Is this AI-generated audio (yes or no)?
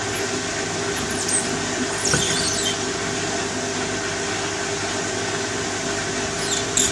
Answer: no